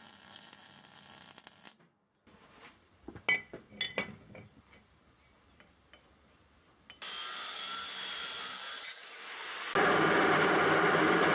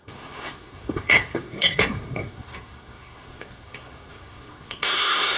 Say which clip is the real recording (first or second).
first